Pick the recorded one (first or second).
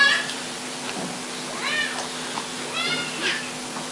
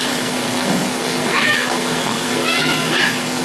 first